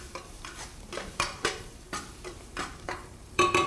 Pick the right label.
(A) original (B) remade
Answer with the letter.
B